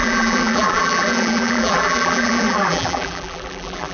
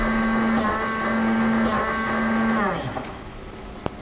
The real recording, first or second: second